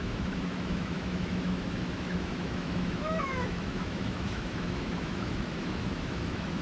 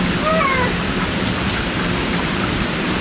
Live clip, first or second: second